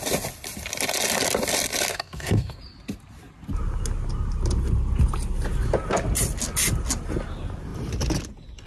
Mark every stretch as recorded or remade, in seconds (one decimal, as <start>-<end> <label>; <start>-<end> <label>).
0.0-1.9 recorded; 1.9-2.6 remade; 2.6-8.7 recorded